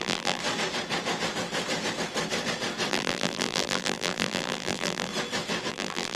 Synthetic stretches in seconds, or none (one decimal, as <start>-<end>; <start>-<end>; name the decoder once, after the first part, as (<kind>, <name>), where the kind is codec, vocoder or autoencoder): 0.0-0.4 (vocoder, BigVGAN v2); 2.9-5.1; 5.7-6.2